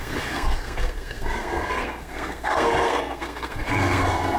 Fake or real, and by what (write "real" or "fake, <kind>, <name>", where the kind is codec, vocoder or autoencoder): fake, codec, SNAC